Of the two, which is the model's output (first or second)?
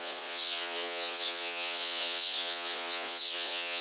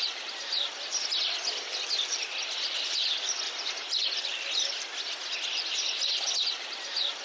first